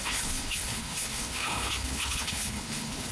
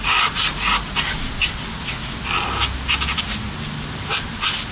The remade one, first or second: first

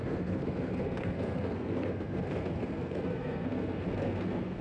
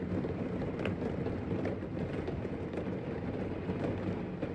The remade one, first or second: first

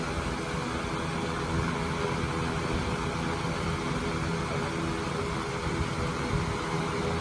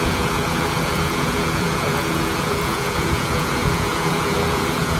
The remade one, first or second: second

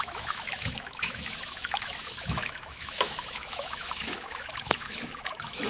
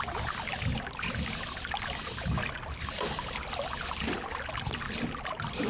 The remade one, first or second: first